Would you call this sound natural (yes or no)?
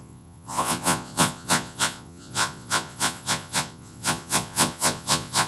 no